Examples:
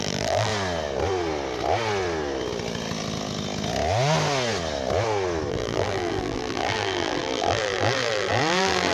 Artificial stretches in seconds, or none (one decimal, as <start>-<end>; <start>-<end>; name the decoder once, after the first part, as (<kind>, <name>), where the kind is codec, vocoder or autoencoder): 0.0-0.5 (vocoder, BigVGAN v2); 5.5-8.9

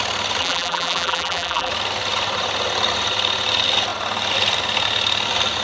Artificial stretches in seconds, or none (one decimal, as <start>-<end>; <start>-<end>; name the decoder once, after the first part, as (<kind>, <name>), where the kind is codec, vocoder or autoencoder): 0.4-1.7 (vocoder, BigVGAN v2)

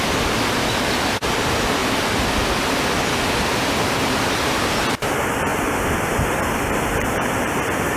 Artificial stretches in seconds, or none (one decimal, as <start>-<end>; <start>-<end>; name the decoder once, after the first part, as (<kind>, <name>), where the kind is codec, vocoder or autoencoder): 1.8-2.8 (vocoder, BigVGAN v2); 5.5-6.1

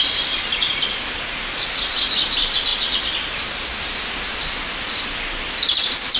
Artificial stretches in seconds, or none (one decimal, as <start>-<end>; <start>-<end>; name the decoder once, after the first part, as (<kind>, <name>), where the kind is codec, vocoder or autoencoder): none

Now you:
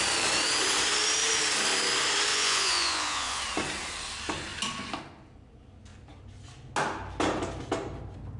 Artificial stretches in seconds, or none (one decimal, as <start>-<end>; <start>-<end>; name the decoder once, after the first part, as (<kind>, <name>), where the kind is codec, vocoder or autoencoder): 2.3-3.4 (vocoder, Vocos)